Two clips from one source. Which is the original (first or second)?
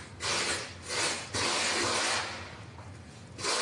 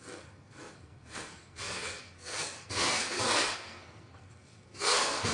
first